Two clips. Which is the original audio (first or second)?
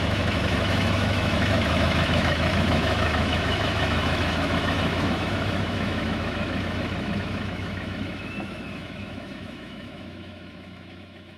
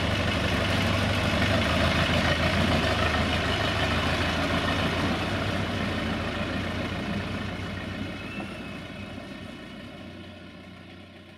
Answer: second